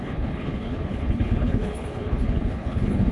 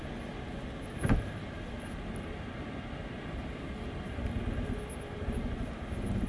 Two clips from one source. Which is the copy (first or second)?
first